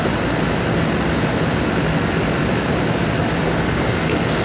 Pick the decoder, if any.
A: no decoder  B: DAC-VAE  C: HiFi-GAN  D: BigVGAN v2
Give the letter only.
A